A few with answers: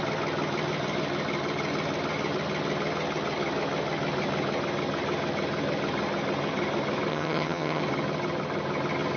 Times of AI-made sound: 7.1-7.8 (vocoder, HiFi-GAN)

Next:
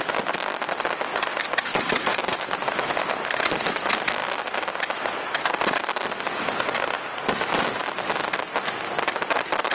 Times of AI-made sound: 1.7-2.9 (vocoder, BigVGAN v2)

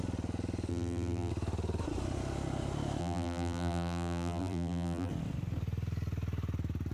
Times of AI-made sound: 0.7-1.3 (vocoder, BigVGAN v2); 3.0-5.1